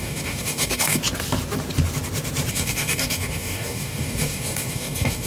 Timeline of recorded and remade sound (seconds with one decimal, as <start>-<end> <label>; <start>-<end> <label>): 0.0-1.0 remade; 1.0-2.5 recorded; 2.5-5.3 remade